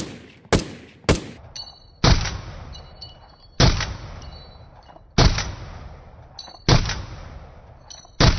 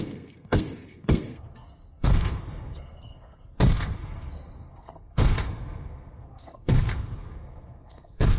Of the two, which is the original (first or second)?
first